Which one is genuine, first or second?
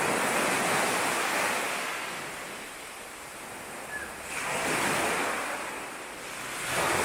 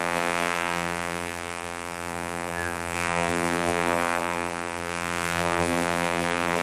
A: first